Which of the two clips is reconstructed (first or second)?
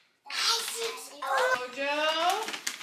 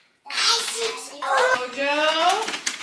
second